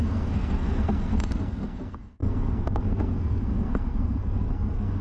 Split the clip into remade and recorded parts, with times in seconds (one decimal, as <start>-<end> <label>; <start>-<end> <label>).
0.0-5.0 remade